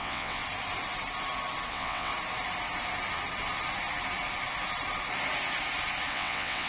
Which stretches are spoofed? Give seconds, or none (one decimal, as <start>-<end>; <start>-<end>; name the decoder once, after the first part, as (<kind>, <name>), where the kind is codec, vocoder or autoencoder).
0.0-0.4 (vocoder, WaveNeXt); 1.7-2.1; 6.1-6.7